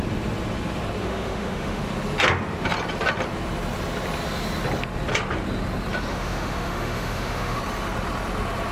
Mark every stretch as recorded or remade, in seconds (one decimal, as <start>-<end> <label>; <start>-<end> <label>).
0.0-1.0 recorded; 1.0-1.8 remade; 1.8-6.1 recorded; 6.1-7.6 remade; 7.6-8.7 recorded